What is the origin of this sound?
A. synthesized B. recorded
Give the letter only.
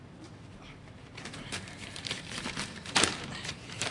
A